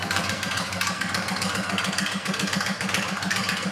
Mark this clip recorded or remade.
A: remade